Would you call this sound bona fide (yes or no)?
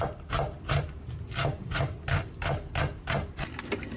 yes